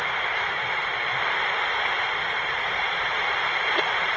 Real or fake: fake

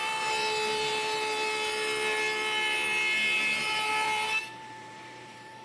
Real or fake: fake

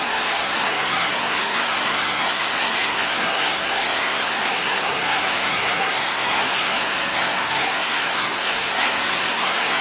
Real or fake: fake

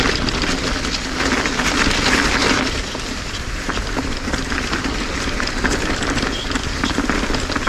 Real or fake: real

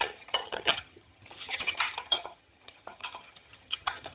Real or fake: fake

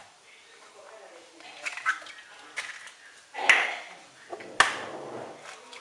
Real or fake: real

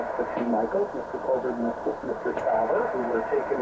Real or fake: fake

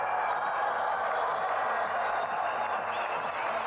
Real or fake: real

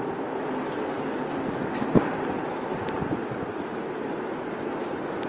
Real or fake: real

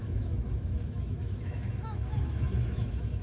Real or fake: fake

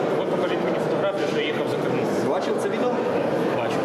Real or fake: real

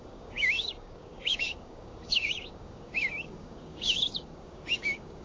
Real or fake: fake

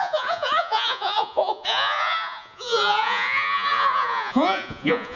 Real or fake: fake